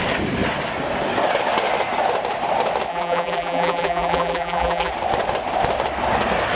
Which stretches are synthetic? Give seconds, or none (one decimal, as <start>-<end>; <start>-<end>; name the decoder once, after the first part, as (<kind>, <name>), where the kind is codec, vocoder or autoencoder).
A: 2.9-4.9 (vocoder, BigVGAN v2)